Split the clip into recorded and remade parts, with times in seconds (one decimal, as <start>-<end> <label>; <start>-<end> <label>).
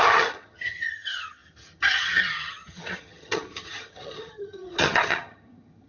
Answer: 0.0-5.9 remade